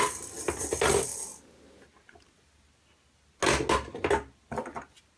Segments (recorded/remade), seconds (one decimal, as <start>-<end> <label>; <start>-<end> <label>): 0.0-5.2 recorded